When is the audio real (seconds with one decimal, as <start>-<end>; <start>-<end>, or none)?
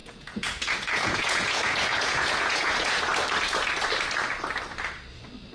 3.1-5.5